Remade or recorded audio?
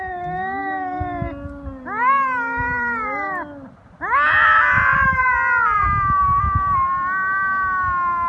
recorded